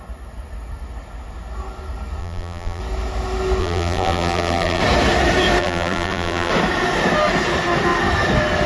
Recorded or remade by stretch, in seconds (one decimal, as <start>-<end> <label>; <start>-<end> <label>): 0.0-2.2 recorded; 2.2-2.8 remade; 2.8-3.6 recorded; 3.6-4.8 remade; 4.8-5.6 recorded; 5.6-6.5 remade; 6.5-8.7 recorded